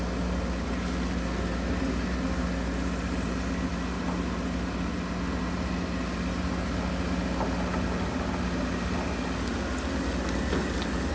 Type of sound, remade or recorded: recorded